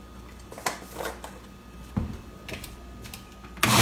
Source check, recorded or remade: recorded